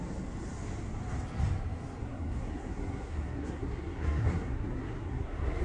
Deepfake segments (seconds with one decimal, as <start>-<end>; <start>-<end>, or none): 2.0-5.6